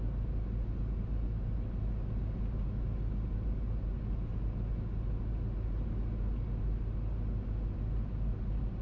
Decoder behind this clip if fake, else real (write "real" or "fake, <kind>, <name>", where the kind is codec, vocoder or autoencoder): real